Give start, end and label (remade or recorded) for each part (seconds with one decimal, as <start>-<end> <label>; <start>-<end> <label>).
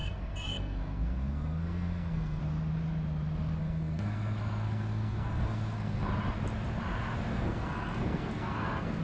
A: 0.0-2.4 remade; 2.4-3.6 recorded; 3.6-6.1 remade; 6.1-7.3 recorded; 7.3-9.0 remade